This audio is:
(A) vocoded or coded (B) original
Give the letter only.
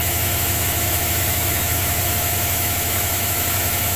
A